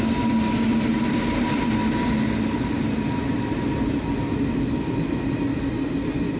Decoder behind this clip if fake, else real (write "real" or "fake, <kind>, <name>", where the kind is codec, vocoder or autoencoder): real